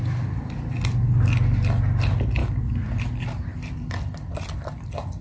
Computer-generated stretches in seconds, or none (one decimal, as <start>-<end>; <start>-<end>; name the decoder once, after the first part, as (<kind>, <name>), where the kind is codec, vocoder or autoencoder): none